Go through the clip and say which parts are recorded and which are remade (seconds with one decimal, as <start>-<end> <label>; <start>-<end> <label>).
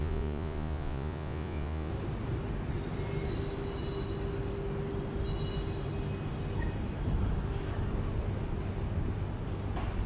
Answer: 0.0-1.9 remade; 1.9-10.1 recorded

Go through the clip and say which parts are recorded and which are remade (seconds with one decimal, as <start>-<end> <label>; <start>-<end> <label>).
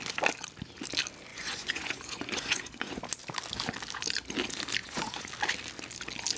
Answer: 0.0-1.3 recorded; 1.3-3.0 remade; 3.0-4.8 recorded; 4.8-5.3 remade; 5.3-6.4 recorded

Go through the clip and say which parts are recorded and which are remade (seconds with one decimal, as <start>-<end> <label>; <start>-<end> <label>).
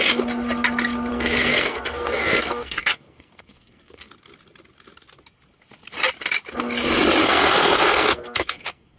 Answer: 0.0-1.1 recorded; 1.1-4.1 remade; 4.1-7.2 recorded; 7.2-9.0 remade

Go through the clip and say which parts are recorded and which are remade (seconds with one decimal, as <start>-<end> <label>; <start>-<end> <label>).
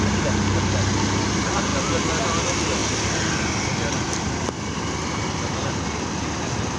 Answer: 0.0-6.8 recorded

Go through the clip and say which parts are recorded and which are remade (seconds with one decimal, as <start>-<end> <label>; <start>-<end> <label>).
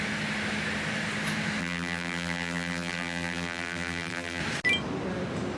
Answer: 0.0-1.6 recorded; 1.6-4.4 remade; 4.4-5.6 recorded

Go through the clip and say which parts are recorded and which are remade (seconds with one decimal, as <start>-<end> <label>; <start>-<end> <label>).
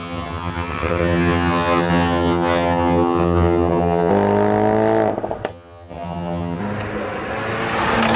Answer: 0.0-4.1 remade; 4.1-5.5 recorded; 5.5-6.6 remade; 6.6-8.2 recorded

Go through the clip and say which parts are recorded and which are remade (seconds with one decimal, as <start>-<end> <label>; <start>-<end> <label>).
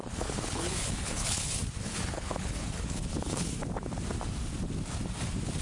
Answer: 0.0-3.6 remade; 3.6-5.6 recorded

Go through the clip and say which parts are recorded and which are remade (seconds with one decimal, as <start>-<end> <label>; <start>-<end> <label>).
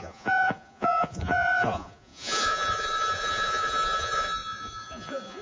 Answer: 0.0-5.4 remade